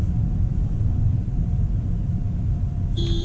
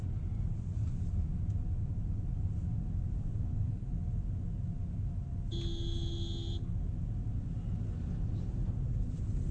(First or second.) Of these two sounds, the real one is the second